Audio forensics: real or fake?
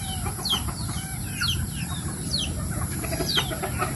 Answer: fake